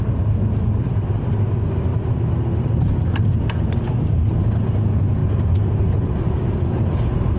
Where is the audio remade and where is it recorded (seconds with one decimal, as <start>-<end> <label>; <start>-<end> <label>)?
0.0-5.2 recorded; 5.2-6.9 remade; 6.9-7.4 recorded